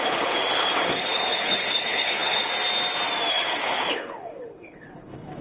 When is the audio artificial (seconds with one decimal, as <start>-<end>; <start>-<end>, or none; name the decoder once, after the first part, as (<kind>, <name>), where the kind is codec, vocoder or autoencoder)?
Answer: 0.0-2.5 (codec, HILCodec); 3.3-5.4